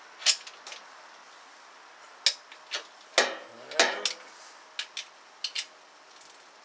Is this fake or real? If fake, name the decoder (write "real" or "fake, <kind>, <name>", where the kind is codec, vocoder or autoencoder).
real